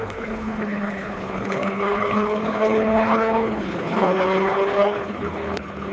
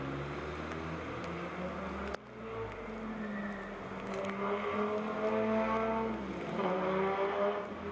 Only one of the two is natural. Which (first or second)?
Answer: second